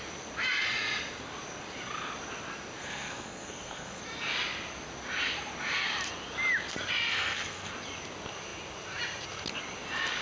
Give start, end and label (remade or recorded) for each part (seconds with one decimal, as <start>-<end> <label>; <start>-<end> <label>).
0.0-2.8 recorded; 2.8-4.0 remade; 4.0-7.1 recorded; 7.1-7.7 remade; 7.7-10.2 recorded